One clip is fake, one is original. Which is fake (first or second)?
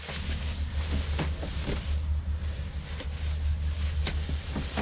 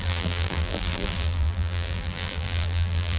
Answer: second